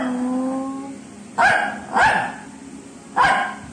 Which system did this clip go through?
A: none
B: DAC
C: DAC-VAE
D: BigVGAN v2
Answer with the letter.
A